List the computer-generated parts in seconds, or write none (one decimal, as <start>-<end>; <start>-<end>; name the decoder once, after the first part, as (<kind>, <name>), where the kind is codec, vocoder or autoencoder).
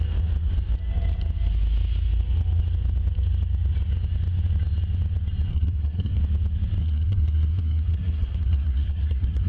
5.5-6.2 (codec, SNAC); 6.8-9.5